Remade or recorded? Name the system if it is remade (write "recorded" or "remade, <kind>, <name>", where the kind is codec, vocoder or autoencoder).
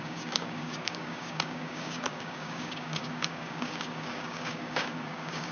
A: remade, codec, DAC